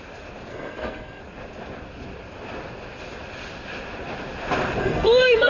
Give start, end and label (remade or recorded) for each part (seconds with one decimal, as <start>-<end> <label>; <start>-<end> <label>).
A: 0.0-0.5 recorded; 0.5-1.2 remade; 1.2-4.8 recorded; 4.8-5.5 remade